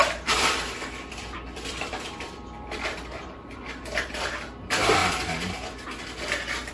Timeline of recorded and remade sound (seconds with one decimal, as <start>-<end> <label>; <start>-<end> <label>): 0.0-5.0 remade; 5.0-6.7 recorded